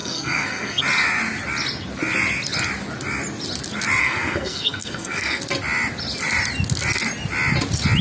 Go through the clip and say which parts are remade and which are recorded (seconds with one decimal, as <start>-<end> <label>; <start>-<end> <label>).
0.0-0.8 remade; 0.8-4.0 recorded; 4.0-5.4 remade; 5.4-8.0 recorded